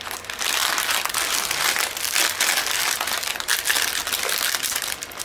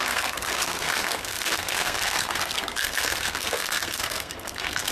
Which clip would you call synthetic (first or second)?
second